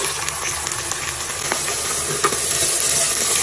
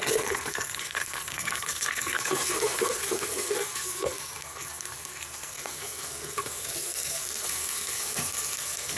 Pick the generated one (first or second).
second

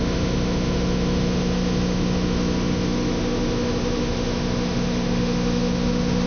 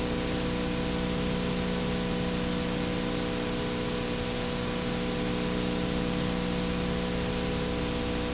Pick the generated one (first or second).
first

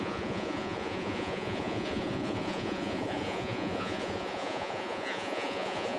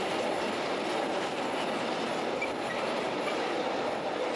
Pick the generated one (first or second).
first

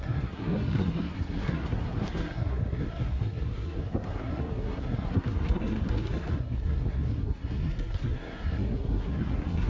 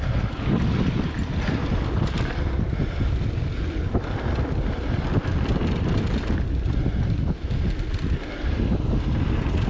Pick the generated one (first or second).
first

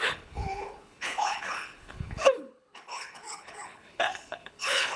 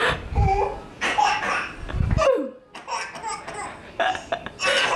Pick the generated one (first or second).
first